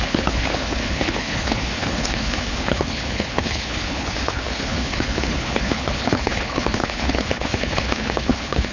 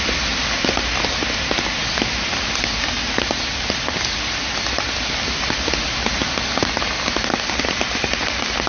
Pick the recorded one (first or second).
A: second